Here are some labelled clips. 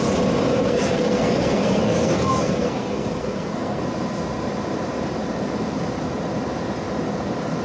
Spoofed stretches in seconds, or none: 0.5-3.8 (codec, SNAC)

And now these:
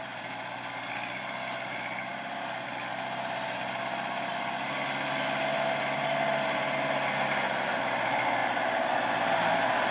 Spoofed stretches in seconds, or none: none

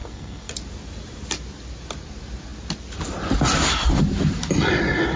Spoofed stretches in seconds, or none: 0.0-0.5 (codec, SNAC)

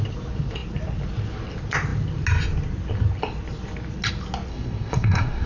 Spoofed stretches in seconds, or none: 4.5-5.5 (codec, SNAC)

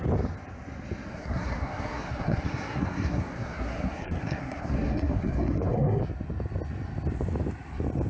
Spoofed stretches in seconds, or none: 1.1-6.0 (codec, SNAC)